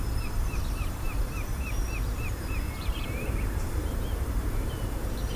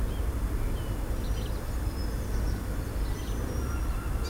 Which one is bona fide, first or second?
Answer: second